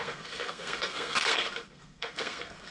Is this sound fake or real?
fake